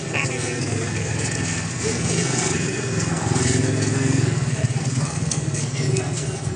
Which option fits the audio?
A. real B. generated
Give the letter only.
B